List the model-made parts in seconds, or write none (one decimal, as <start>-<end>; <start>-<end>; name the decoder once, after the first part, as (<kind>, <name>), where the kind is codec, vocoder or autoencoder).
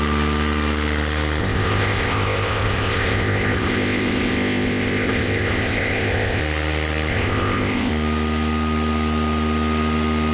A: 1.4-6.4 (codec, ZipCodec); 7.1-7.9